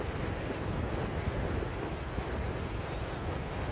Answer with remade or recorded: recorded